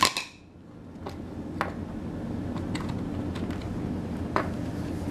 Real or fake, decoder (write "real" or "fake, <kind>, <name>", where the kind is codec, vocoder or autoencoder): real